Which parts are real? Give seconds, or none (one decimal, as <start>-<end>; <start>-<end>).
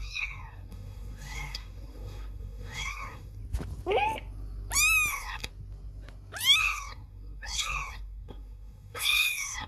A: 3.4-5.1; 5.5-6.6